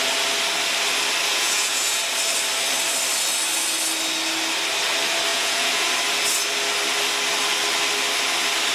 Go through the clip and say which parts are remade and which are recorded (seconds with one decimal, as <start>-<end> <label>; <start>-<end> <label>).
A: 0.0-1.3 recorded; 1.3-2.0 remade; 2.0-5.3 recorded; 5.3-5.9 remade; 5.9-8.7 recorded